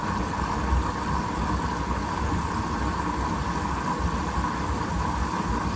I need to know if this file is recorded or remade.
recorded